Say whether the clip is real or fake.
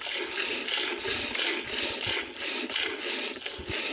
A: real